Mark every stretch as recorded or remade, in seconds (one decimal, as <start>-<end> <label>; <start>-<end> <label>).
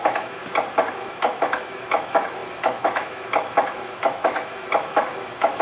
0.0-0.4 remade; 0.4-0.9 recorded; 0.9-5.6 remade